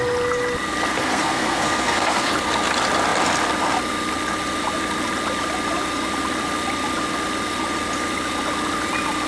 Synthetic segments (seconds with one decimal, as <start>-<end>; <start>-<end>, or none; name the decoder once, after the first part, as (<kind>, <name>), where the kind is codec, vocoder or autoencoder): 0.9-2.3 (codec, SNAC)